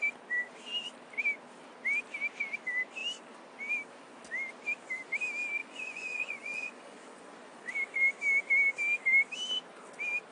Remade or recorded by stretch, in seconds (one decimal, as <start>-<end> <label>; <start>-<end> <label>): 0.0-5.6 recorded; 5.6-7.7 remade; 7.7-10.3 recorded